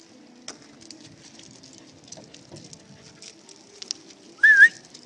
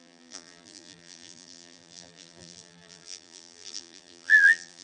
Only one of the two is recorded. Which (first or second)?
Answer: first